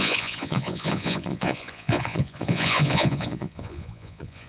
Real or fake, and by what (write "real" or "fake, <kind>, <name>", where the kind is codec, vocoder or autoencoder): fake, vocoder, Vocos